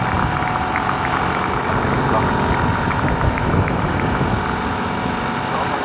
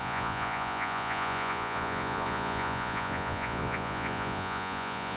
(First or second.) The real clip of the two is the first